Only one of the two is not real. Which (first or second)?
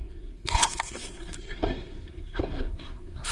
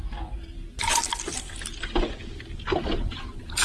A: first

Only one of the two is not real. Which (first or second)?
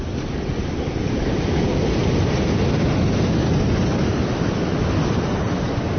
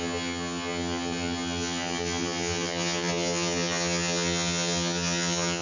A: second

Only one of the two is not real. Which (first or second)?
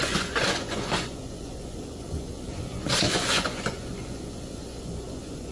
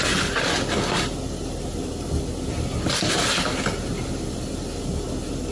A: first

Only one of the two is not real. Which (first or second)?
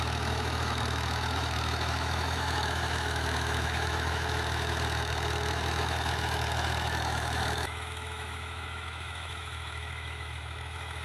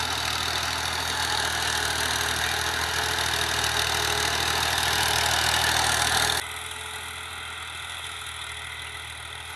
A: first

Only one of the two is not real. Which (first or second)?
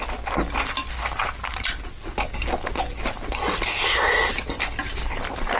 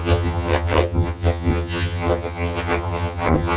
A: second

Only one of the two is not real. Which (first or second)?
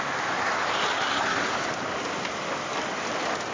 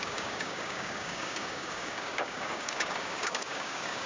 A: second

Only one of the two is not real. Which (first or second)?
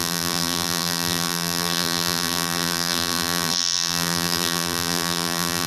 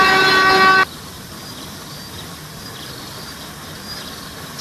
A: first